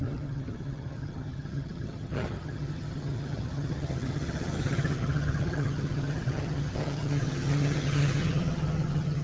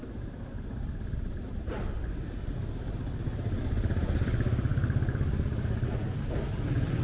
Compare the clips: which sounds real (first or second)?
second